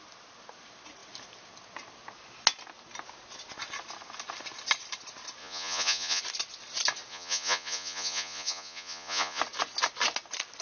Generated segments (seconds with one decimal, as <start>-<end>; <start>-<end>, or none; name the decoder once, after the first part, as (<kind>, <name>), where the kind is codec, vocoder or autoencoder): 5.4-6.2 (vocoder, Vocos); 7.1-9.4